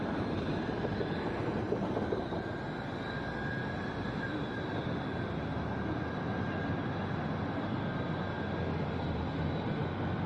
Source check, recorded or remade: recorded